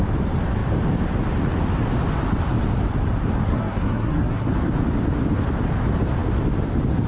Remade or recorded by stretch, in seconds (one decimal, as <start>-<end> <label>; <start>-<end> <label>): 0.0-3.4 recorded; 3.4-4.5 remade; 4.5-7.1 recorded